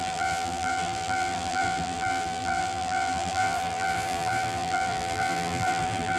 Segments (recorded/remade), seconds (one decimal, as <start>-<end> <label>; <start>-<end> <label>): 0.0-6.2 remade